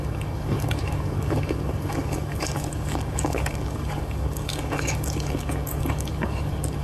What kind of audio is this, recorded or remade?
remade